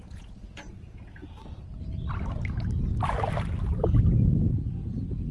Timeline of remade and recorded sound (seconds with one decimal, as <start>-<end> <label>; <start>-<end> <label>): 0.0-1.4 remade; 1.4-4.4 recorded; 4.4-5.3 remade